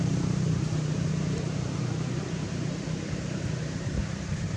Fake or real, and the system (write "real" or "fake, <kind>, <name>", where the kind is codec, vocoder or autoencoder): fake, vocoder, BigVGAN v2